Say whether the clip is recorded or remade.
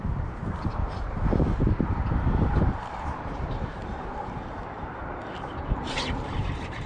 remade